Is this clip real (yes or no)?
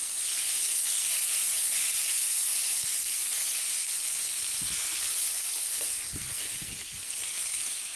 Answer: no